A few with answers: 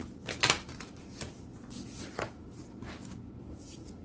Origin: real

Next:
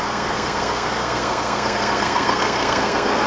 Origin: fake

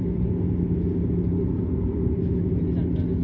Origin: real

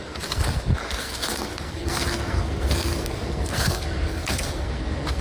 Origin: fake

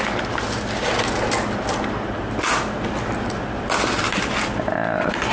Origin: real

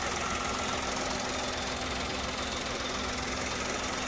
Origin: real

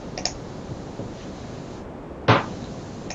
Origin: real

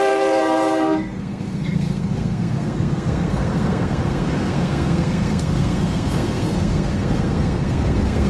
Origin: fake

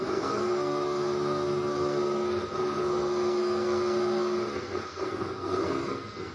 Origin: fake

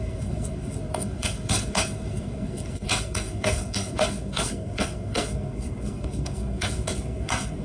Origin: fake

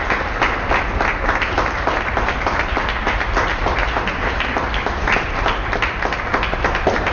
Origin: real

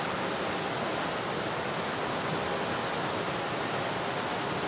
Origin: real